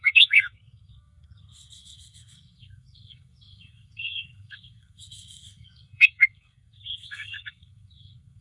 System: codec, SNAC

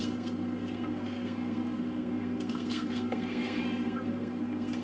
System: codec, SNAC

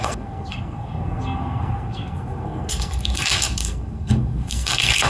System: codec, SNAC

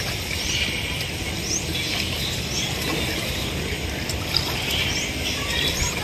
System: none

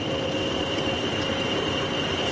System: none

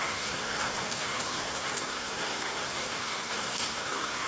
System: codec, SNAC